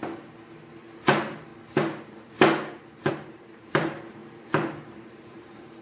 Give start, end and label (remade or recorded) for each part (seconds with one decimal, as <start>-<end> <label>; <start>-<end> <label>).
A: 0.0-0.6 recorded; 0.6-1.5 remade; 1.5-3.1 recorded; 3.1-5.8 remade